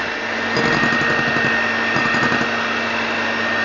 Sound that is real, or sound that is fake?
real